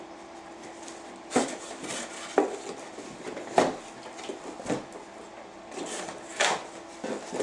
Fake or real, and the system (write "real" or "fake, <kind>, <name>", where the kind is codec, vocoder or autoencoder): real